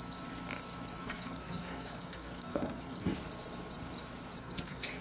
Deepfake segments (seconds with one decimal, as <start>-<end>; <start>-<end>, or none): 1.0-3.2; 4.4-5.0